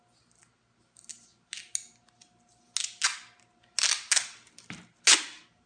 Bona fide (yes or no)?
yes